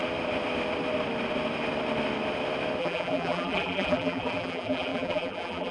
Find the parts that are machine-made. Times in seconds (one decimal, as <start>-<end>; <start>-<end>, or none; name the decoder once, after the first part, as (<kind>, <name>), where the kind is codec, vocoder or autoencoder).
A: 2.8-5.7 (vocoder, BigVGAN v2)